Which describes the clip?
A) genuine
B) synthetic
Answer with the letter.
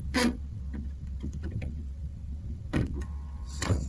B